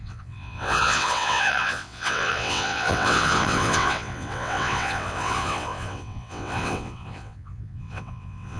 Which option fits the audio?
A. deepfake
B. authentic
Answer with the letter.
A